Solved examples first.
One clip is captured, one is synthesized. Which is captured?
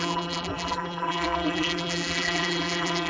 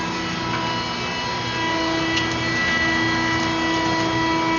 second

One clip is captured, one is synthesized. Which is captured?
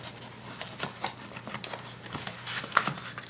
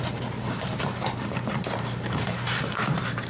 first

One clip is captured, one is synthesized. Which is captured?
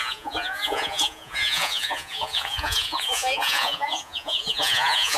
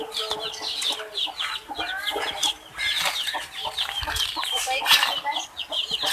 second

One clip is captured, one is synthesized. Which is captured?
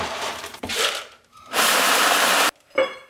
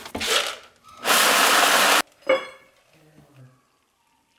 second